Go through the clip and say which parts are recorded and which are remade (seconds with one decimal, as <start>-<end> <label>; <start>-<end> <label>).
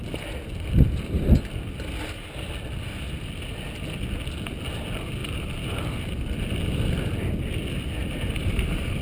0.0-8.0 recorded; 8.0-9.0 remade